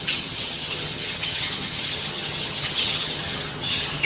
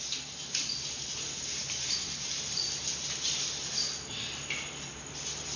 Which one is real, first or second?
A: second